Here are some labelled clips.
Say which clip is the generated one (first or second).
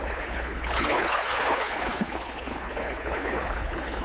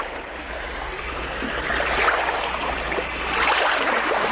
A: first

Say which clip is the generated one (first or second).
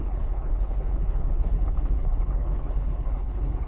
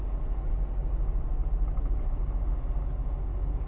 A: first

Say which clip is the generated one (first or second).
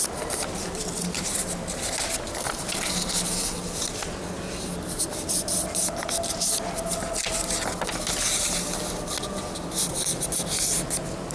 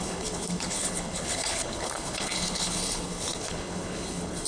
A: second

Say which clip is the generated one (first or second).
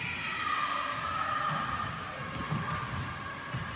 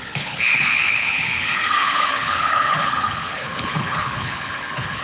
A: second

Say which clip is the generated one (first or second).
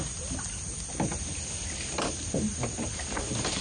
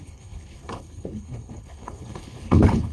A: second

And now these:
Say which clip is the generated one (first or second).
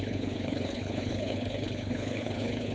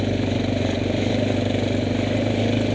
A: first